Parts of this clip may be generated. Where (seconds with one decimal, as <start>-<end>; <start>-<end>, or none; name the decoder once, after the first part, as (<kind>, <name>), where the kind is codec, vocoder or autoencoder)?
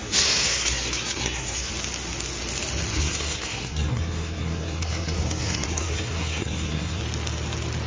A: 0.0-1.7 (codec, SNAC); 2.9-7.0